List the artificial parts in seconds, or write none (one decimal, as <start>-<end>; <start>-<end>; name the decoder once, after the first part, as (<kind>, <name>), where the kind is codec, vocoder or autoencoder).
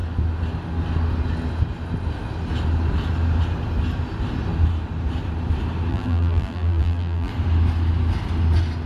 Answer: 5.9-7.3 (vocoder, BigVGAN v2)